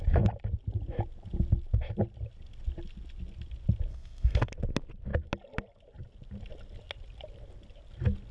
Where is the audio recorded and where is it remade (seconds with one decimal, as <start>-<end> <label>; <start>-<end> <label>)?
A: 0.0-3.9 recorded; 3.9-4.5 remade; 4.5-8.3 recorded